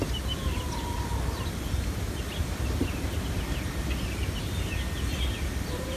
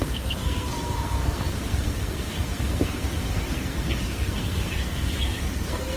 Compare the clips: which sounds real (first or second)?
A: first